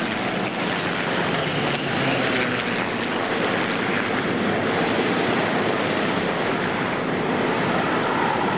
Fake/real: real